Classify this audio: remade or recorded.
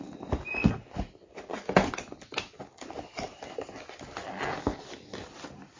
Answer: recorded